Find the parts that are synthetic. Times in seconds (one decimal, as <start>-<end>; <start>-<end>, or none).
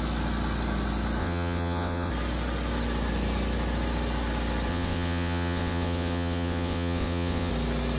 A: 1.2-2.1; 4.7-7.5